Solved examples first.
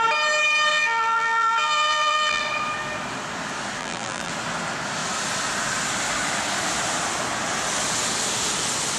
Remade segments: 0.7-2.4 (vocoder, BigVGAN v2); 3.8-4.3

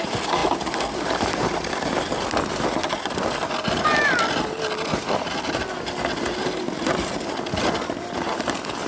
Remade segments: none

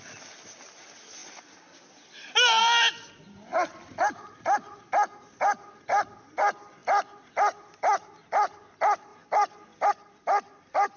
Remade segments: 6.8-7.8 (vocoder, BigVGAN v2); 9.1-9.9

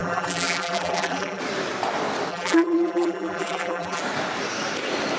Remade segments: 0.0-1.4 (vocoder, BigVGAN v2); 2.3-4.0

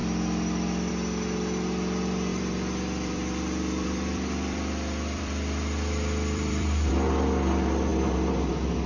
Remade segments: 2.3-6.9 (vocoder, BigVGAN v2)

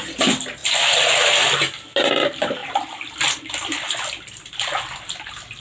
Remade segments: 0.6-1.3 (vocoder, BigVGAN v2); 2.6-5.1

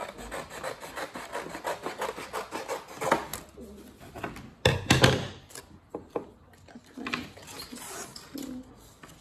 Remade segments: 8.1-8.7 (vocoder, BigVGAN v2)